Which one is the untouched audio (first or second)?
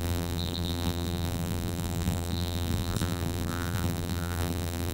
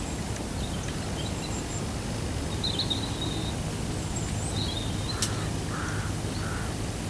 second